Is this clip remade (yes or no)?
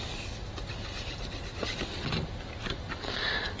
no